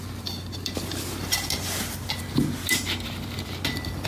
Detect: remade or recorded recorded